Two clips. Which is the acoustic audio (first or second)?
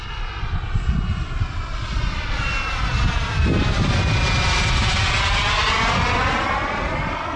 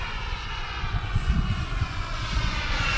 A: first